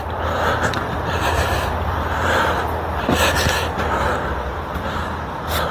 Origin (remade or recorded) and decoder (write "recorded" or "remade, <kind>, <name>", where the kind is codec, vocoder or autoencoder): recorded